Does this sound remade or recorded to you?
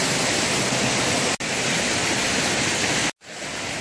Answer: recorded